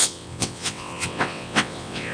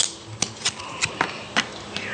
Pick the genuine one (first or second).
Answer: second